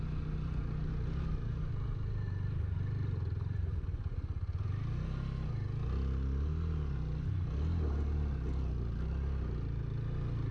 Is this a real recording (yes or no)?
yes